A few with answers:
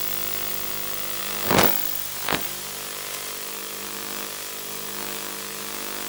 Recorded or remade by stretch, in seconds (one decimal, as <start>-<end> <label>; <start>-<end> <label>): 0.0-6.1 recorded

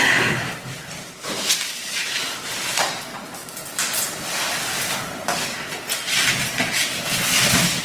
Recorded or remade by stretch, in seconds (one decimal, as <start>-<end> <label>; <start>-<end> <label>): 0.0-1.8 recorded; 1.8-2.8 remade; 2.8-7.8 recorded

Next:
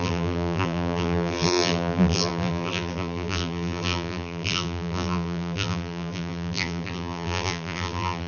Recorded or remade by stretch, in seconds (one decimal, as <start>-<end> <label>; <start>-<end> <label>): 0.0-8.3 remade

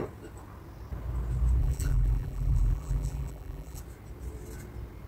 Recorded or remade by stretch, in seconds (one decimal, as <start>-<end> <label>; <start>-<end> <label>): 0.0-1.6 recorded; 1.6-3.8 remade; 3.8-5.1 recorded

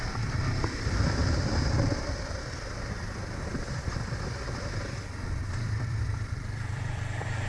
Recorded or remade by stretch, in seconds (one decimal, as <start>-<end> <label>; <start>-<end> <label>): 0.0-1.2 remade; 1.2-4.2 recorded; 4.2-7.5 remade